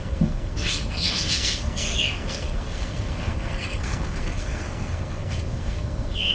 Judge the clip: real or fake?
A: fake